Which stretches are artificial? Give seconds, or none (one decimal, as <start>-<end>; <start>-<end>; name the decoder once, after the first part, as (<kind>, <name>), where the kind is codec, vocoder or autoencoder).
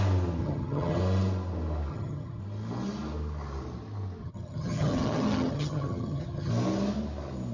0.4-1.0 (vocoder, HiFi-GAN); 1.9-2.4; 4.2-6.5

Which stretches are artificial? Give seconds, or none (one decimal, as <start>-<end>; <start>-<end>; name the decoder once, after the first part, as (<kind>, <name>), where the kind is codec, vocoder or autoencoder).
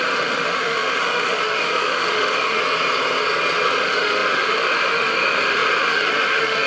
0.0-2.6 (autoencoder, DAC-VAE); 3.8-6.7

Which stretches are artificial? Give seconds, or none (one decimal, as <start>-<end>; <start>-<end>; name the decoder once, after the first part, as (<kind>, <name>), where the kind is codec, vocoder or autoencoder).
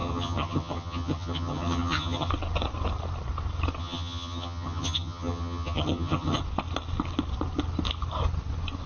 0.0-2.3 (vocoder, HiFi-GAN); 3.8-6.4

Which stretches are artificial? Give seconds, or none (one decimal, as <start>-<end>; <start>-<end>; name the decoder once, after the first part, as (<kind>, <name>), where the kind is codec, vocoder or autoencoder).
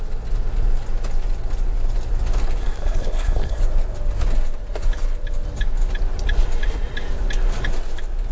2.6-3.6 (codec, SNAC)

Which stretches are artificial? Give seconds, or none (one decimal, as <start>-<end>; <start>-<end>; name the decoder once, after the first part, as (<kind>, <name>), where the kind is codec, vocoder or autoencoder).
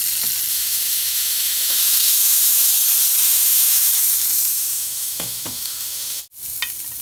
0.5-2.7 (autoencoder, DAC-VAE); 3.2-3.9; 4.5-6.2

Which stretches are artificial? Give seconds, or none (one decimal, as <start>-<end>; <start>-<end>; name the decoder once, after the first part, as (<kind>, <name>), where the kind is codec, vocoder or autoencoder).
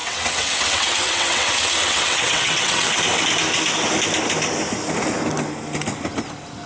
0.0-3.0 (vocoder, WaveNeXt)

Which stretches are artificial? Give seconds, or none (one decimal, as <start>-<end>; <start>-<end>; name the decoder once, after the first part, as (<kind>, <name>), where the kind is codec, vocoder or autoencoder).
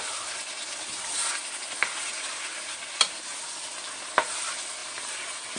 1.8-3.2 (vocoder, BigVGAN v2); 4.8-5.6